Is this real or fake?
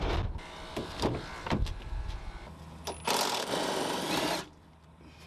real